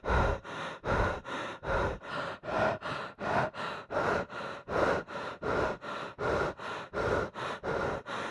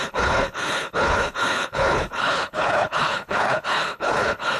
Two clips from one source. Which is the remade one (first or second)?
second